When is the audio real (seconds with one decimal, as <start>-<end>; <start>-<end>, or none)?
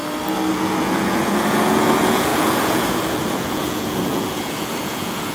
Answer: 0.0-0.5